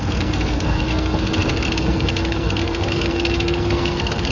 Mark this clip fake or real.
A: fake